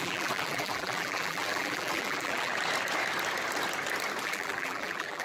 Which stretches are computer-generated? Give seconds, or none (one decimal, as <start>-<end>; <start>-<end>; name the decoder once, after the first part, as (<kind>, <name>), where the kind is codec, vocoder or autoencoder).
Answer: 0.0-2.5 (vocoder, BigVGAN v2); 4.2-5.2